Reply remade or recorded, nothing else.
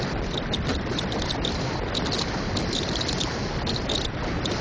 recorded